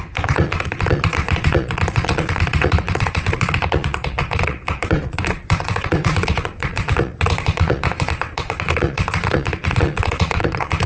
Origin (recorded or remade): remade